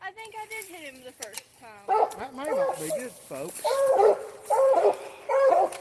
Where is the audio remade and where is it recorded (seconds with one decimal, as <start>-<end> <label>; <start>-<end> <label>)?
0.0-5.8 remade